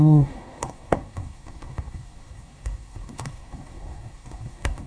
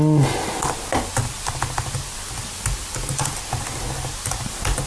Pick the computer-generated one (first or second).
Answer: first